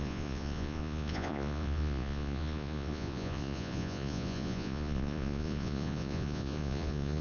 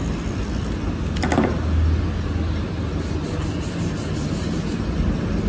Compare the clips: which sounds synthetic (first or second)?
first